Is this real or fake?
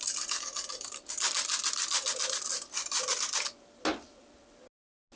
real